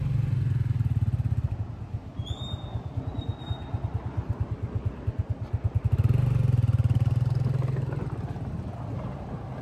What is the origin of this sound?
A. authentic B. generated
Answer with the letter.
A